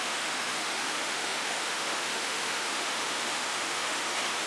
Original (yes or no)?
no